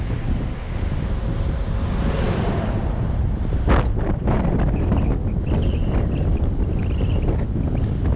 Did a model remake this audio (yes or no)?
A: no